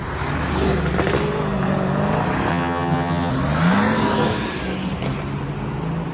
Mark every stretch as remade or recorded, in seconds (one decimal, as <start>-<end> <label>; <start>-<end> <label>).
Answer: 0.0-2.5 recorded; 2.5-3.3 remade; 3.3-6.1 recorded